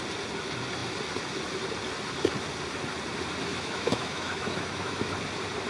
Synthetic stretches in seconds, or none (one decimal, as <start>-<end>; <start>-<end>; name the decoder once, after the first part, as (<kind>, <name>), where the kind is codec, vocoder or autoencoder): 3.5-5.1 (autoencoder, DAC-VAE)